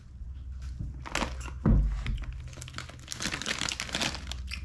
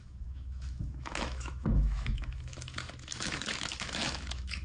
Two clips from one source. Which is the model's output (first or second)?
second